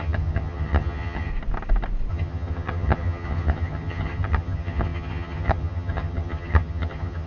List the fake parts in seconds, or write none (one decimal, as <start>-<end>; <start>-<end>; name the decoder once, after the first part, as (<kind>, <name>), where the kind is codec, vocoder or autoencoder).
0.0-1.3 (vocoder, HiFi-GAN); 2.1-7.3